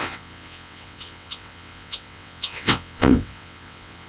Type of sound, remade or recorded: remade